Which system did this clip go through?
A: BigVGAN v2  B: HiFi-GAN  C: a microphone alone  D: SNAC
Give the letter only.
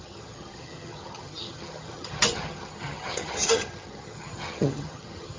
B